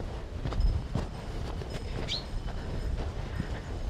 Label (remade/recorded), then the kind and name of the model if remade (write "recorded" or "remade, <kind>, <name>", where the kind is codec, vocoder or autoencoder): recorded